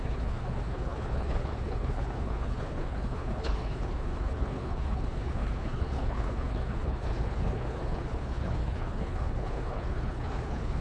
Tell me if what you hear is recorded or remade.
remade